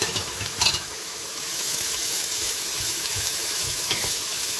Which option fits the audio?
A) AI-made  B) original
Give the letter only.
A